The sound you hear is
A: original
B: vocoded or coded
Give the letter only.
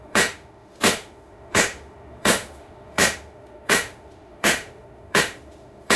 B